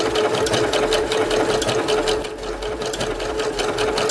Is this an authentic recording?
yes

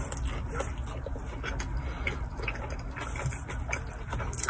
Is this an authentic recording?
yes